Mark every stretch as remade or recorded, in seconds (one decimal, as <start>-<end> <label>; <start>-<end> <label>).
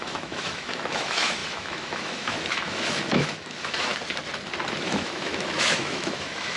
0.0-3.9 remade; 3.9-4.8 recorded; 4.8-6.6 remade